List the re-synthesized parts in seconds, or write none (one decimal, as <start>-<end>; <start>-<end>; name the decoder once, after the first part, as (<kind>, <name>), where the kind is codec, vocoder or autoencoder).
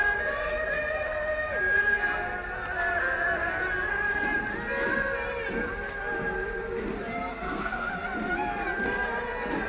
7.3-7.9 (codec, SNAC)